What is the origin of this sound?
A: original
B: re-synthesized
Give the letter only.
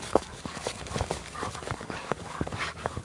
B